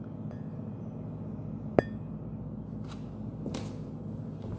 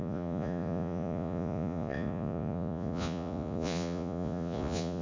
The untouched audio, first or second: first